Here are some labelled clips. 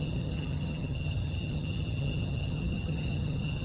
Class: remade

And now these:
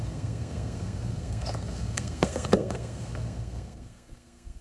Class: remade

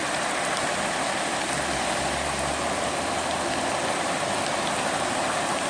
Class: recorded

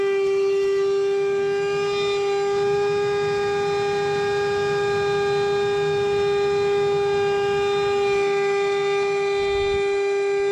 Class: recorded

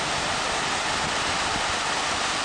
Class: recorded